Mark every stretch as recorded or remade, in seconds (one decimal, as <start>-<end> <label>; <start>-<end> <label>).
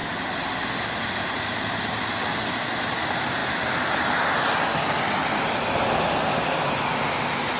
0.0-7.6 recorded